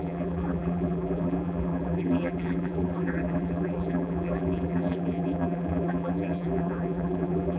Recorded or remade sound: remade